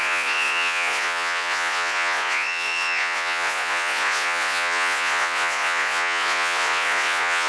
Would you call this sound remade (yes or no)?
yes